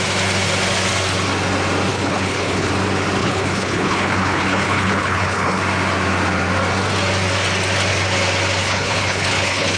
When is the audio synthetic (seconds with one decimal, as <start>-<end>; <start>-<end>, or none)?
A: 1.9-2.7; 3.2-5.6; 8.6-9.8